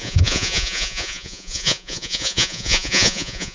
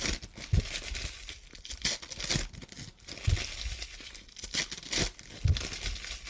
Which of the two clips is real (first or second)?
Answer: second